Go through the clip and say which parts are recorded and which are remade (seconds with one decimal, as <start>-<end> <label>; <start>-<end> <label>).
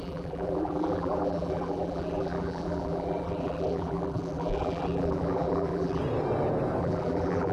0.0-6.0 remade; 6.0-6.8 recorded; 6.8-7.5 remade